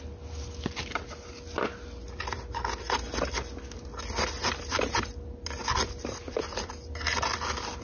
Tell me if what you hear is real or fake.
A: real